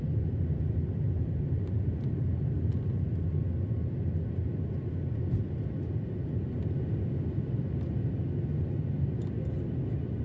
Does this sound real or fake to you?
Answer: real